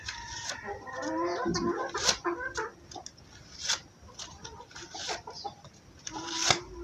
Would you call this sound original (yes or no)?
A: yes